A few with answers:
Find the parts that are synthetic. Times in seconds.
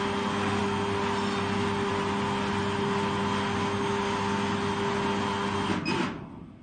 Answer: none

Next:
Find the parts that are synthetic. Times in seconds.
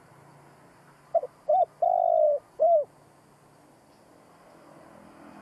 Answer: none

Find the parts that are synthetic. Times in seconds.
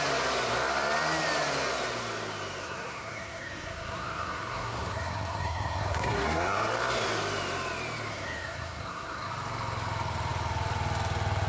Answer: 2.6-6.7 (codec, SNAC); 8.1-9.3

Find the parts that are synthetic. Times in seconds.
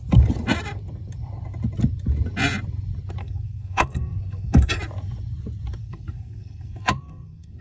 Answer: 3.2-4.8 (codec, SNAC); 5.8-7.6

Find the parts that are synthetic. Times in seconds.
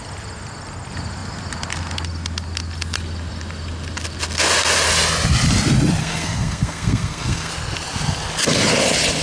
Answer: 6.0-7.5 (codec, SNAC)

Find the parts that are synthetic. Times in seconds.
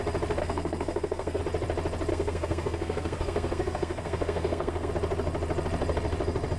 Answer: 0.4-1.4 (codec, SNAC); 2.1-4.9